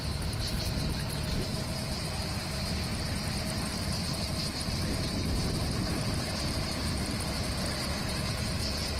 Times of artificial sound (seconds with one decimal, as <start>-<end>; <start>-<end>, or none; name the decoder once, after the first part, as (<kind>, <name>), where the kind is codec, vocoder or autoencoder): 2.2-7.2 (vocoder, BigVGAN v2)